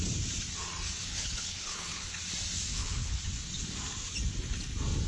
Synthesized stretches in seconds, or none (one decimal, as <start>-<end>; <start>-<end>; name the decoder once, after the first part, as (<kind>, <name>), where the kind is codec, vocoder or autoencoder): 1.0-2.2 (codec, HILCodec); 2.7-3.2